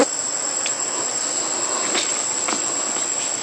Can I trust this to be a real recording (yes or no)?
yes